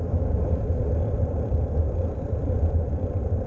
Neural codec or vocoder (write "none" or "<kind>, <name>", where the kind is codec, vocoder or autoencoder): vocoder, BigVGAN v2